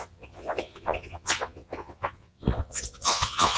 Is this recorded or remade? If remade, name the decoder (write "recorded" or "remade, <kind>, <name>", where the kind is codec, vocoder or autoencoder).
remade, vocoder, Vocos